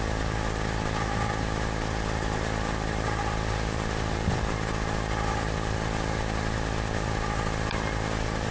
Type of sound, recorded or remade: remade